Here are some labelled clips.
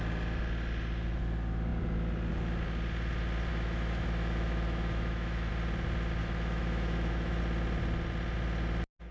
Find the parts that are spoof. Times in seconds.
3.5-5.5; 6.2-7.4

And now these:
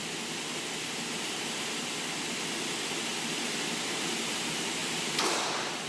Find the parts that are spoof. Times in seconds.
none

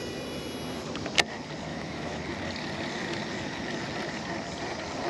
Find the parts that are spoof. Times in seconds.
1.7-2.2